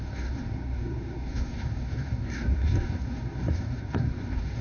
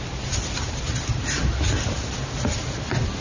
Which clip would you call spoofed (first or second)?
first